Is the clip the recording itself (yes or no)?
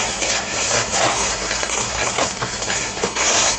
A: no